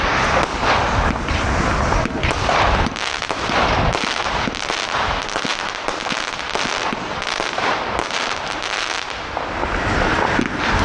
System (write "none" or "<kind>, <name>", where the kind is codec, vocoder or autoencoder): none